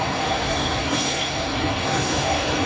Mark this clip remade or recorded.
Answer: remade